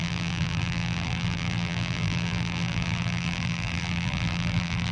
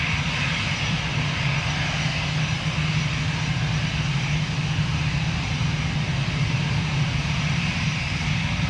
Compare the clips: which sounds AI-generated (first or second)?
first